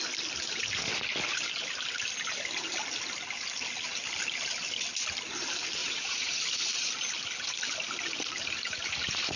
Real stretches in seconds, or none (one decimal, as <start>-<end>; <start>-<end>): 0.0-5.8; 6.4-9.4